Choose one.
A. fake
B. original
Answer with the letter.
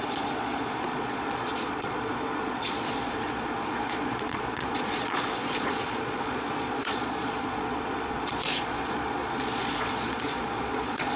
A